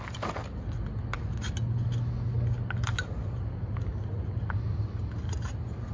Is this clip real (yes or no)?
yes